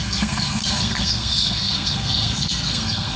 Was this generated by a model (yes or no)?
yes